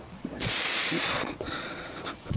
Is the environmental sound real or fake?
fake